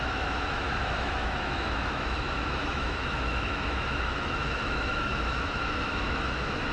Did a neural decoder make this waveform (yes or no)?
yes